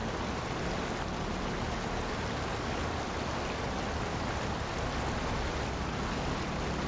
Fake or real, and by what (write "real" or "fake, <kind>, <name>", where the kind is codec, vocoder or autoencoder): real